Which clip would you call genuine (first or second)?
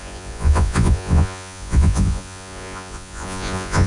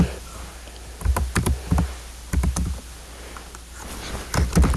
second